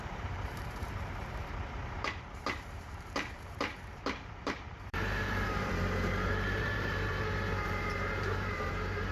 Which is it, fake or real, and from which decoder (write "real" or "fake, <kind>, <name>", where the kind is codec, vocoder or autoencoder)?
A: fake, vocoder, BigVGAN v2